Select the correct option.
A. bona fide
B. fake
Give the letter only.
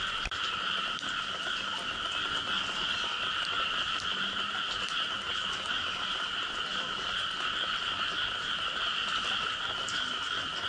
A